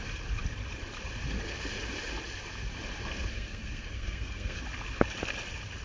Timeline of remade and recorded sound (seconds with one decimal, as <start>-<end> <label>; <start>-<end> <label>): 0.0-3.3 recorded; 3.3-4.6 remade; 4.6-5.8 recorded